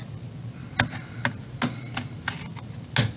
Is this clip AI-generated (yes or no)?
no